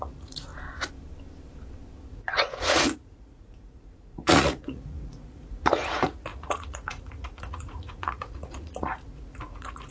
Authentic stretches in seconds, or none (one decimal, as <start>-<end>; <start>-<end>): 0.5-2.1

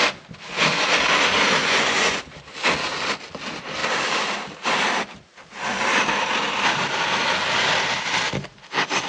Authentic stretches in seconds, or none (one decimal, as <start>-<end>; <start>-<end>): 0.0-1.6; 2.2-9.1

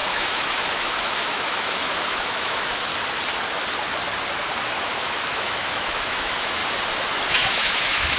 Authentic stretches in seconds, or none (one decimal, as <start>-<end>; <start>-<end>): 2.9-4.5; 6.6-7.3